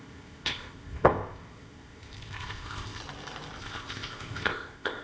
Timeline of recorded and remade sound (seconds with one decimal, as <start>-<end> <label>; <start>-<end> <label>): 0.0-3.0 remade; 3.0-3.6 recorded; 3.6-5.0 remade